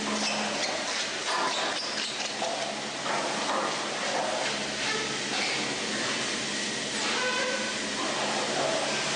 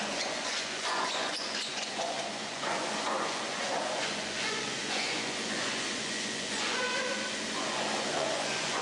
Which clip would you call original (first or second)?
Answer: first